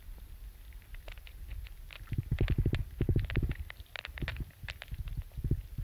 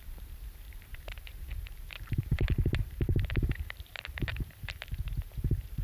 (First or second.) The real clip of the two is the first